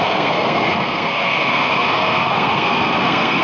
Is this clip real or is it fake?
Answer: fake